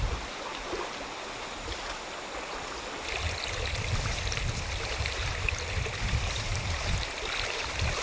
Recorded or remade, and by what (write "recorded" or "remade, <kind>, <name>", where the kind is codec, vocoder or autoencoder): remade, vocoder, BigVGAN v2